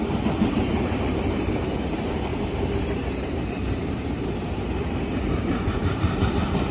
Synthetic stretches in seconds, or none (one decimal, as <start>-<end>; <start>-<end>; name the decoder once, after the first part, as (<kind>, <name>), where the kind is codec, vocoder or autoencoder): 0.7-1.5 (vocoder, BigVGAN v2); 2.3-6.3